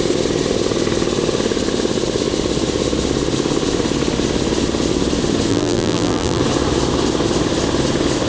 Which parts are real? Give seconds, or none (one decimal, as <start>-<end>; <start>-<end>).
0.0-5.5; 6.4-8.3